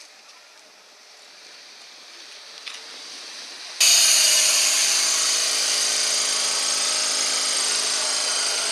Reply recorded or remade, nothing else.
recorded